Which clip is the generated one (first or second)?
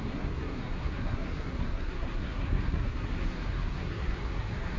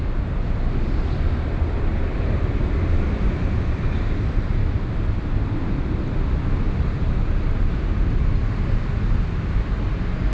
first